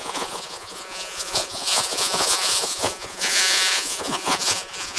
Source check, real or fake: fake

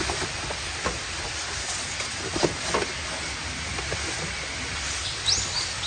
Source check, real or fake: real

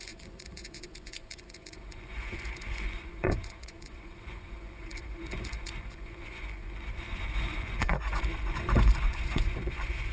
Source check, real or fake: fake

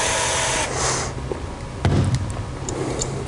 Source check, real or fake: real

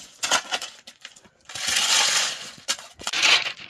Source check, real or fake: fake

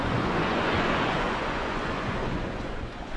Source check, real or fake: fake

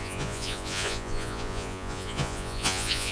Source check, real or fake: fake